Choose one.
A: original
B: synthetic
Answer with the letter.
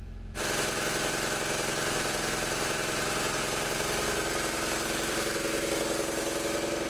B